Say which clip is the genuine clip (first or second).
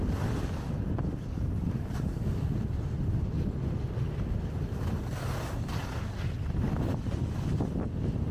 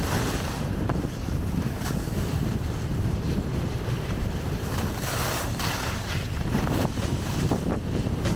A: first